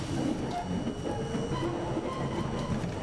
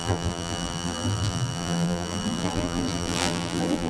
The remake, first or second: second